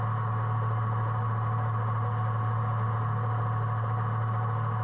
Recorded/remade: recorded